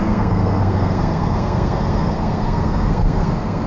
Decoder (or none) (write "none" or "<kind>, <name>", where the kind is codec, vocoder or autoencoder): codec, SNAC